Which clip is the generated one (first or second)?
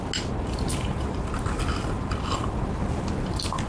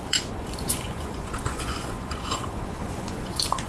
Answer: second